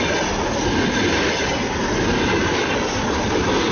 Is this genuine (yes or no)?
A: yes